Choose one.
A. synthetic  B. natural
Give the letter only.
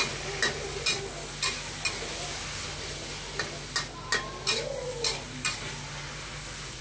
B